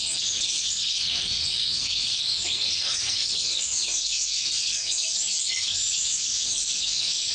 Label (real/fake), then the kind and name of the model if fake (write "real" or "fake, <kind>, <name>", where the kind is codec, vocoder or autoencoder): fake, codec, SNAC